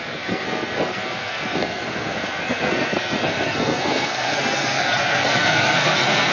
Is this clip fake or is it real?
fake